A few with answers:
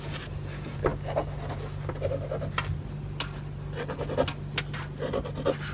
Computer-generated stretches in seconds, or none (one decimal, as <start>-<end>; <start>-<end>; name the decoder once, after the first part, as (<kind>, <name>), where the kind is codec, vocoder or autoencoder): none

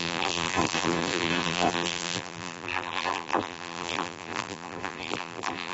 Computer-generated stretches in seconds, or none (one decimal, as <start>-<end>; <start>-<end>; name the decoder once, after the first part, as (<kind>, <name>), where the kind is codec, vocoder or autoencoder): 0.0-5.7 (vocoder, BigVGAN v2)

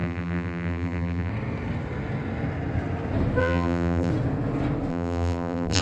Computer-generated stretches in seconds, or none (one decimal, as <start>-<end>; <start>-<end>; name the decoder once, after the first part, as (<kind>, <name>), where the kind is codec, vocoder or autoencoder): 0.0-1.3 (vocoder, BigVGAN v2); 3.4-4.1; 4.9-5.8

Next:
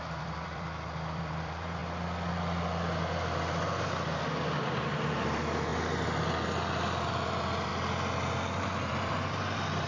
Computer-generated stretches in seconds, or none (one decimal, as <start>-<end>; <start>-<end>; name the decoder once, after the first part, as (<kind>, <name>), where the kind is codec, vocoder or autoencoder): 0.0-1.8 (vocoder, BigVGAN v2); 4.7-5.7; 7.1-7.7; 8.6-9.9

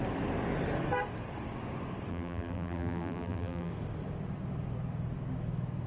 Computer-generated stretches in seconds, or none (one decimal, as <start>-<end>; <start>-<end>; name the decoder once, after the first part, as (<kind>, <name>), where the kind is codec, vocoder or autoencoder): 2.1-3.7 (vocoder, BigVGAN v2)